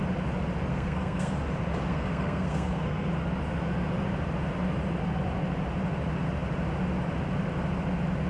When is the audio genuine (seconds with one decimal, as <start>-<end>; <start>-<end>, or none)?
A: 0.0-0.7; 1.3-1.9; 3.1-8.3